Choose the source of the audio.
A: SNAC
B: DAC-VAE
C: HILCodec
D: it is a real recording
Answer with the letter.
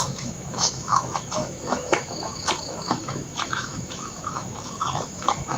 B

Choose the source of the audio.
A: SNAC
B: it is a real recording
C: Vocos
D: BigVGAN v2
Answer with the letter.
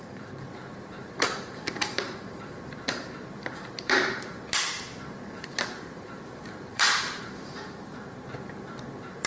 D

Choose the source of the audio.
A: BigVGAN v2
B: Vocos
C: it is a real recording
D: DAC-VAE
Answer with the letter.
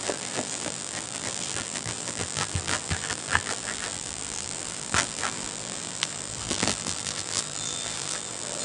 A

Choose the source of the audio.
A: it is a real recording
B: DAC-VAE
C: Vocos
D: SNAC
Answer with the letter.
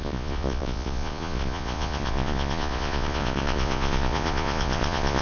C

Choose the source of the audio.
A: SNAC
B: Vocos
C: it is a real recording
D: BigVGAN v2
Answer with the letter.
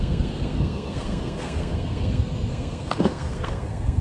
A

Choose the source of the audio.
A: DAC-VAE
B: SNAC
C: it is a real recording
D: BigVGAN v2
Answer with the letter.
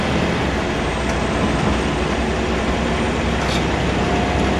C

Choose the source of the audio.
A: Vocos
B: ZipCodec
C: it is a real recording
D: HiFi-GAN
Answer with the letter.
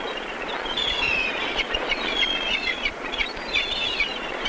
A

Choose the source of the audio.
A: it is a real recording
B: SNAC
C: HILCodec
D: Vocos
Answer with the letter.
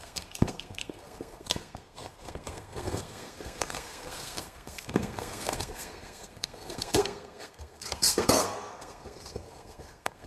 B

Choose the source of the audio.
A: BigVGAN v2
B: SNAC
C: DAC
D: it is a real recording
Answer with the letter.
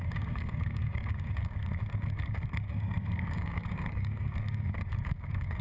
C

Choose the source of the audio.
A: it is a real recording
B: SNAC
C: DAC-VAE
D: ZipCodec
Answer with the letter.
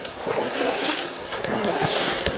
B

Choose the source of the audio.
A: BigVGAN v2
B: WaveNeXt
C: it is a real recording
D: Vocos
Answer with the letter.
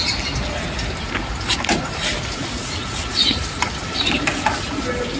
C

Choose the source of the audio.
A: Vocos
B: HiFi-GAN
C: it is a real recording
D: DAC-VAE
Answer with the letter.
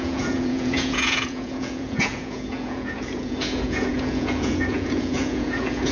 A